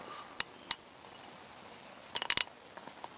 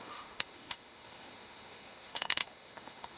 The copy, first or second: second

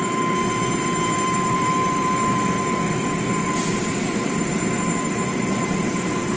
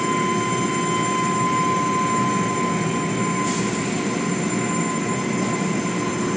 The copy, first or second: first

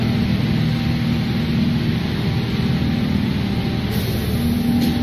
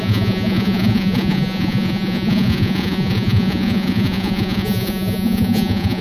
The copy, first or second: second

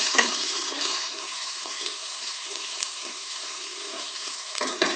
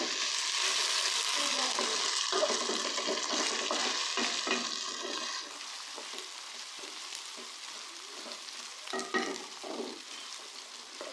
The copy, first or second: first